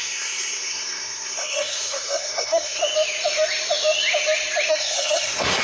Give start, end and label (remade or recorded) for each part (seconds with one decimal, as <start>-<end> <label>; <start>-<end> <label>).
0.0-2.8 remade; 2.8-4.7 recorded; 4.7-5.6 remade